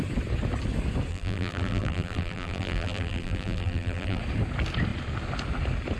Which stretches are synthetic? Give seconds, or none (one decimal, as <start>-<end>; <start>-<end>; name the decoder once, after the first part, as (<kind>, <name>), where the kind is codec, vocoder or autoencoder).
1.1-4.2 (vocoder, BigVGAN v2)